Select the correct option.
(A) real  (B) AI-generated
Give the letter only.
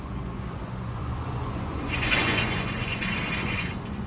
B